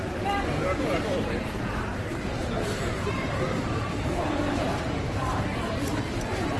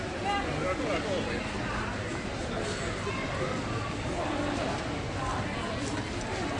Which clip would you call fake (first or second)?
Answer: first